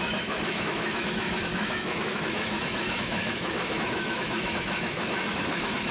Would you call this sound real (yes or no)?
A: no